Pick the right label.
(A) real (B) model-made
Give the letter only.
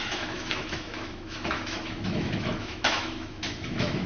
B